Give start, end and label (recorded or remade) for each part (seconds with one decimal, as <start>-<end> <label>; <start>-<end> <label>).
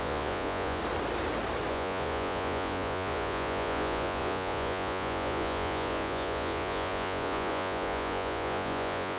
0.0-0.8 remade; 0.8-1.7 recorded; 1.7-9.2 remade